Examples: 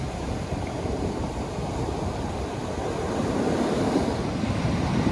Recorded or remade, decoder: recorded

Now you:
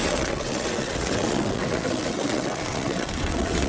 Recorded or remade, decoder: remade, vocoder, WaveNeXt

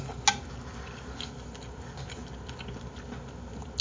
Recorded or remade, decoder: recorded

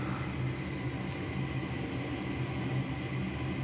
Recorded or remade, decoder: recorded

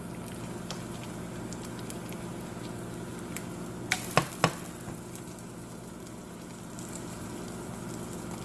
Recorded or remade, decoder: recorded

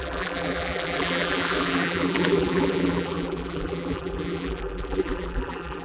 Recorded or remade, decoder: remade, vocoder, BigVGAN v2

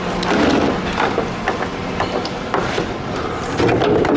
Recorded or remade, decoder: recorded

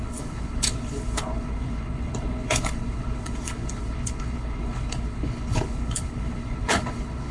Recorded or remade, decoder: remade, codec, HILCodec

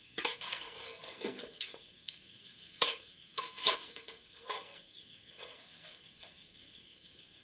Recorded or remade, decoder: remade, codec, SNAC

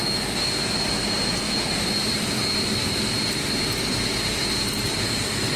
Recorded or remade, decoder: recorded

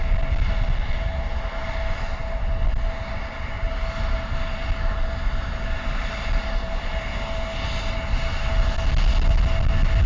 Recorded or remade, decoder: recorded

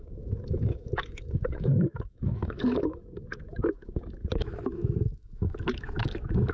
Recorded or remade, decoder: remade, autoencoder, DAC-VAE